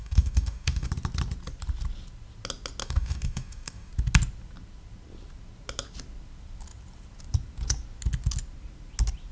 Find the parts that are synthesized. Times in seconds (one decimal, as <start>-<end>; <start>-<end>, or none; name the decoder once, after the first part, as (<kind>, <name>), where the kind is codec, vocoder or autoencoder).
0.0-0.9 (codec, DAC); 2.8-3.9